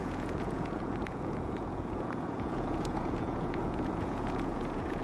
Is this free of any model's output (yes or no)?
no